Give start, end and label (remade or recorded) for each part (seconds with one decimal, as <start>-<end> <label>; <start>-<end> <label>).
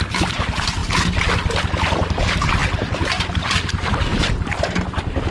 0.0-5.3 recorded